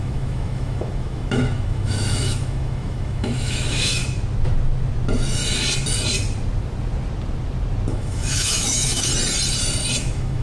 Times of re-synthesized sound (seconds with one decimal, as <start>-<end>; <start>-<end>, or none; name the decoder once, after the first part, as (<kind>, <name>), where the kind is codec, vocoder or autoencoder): 0.0-4.0 (autoencoder, DAC-VAE); 7.9-9.1; 10.0-10.4